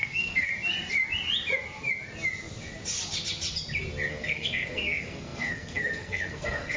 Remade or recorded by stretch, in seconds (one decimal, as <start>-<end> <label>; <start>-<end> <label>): 0.0-0.5 remade; 0.5-4.1 recorded; 4.1-6.8 remade